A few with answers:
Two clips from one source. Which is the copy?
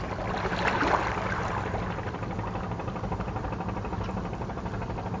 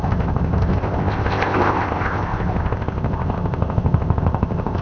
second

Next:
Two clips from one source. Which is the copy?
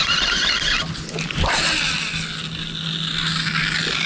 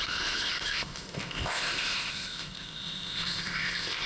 second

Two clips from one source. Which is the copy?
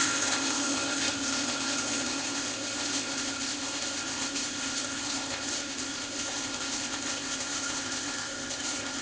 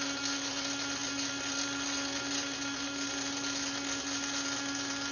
first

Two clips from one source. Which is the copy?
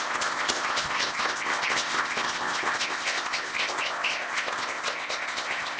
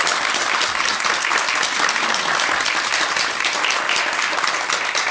first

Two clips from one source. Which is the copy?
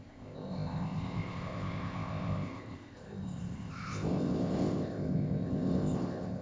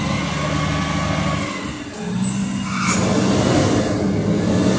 first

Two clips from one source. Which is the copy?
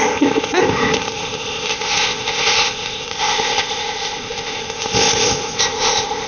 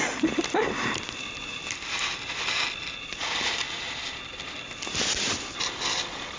first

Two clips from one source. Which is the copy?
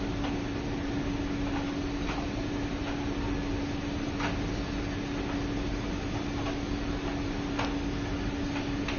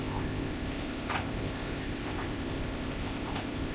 second